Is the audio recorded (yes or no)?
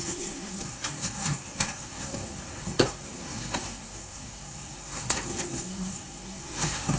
no